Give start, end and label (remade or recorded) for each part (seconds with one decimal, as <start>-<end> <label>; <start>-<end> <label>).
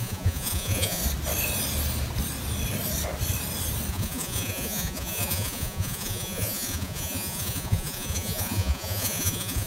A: 0.0-1.0 remade; 1.0-3.9 recorded; 3.9-9.7 remade